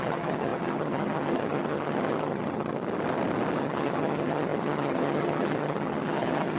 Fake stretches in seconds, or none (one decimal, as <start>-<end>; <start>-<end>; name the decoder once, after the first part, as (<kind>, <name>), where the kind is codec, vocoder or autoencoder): 0.0-2.8 (vocoder, HiFi-GAN); 3.6-6.6